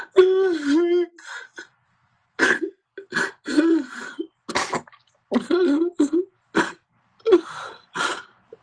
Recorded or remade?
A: recorded